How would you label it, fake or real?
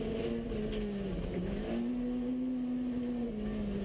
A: real